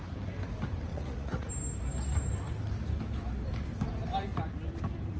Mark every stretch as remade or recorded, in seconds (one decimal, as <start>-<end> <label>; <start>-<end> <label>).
0.0-0.9 recorded; 0.9-1.5 remade; 1.5-5.2 recorded